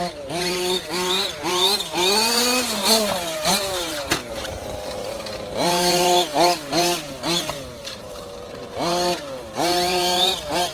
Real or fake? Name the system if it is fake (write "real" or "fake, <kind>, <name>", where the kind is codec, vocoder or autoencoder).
fake, vocoder, BigVGAN v2